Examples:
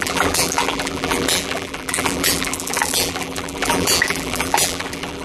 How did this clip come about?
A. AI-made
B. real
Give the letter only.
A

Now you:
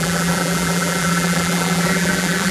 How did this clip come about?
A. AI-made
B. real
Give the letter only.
A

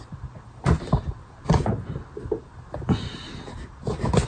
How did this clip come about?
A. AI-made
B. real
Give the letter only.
B